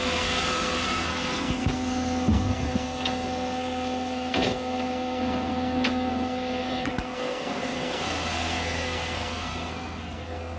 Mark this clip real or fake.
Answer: fake